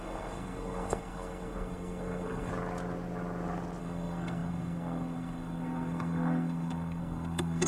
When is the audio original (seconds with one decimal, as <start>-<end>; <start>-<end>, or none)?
2.5-3.8